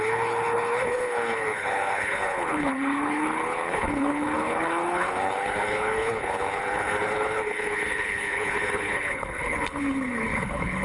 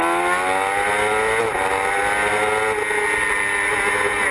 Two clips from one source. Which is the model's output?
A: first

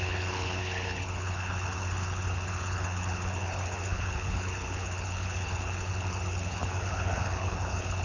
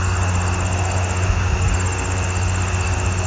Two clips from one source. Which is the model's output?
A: first